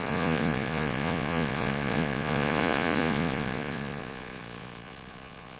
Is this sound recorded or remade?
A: remade